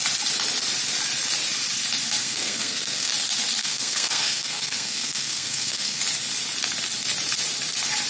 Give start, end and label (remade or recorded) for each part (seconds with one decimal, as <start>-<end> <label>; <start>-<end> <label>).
0.0-2.2 recorded; 2.2-3.1 remade; 3.1-3.6 recorded; 3.6-6.0 remade; 6.0-8.1 recorded